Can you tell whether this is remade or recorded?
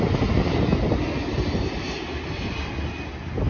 recorded